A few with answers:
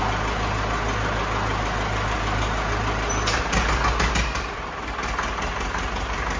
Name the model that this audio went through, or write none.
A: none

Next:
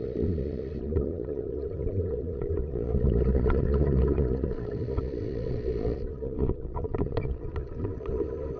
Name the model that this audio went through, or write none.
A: vocoder, Vocos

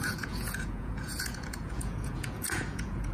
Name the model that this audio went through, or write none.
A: vocoder, Vocos